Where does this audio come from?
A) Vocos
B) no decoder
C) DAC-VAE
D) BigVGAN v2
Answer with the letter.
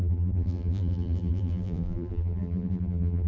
D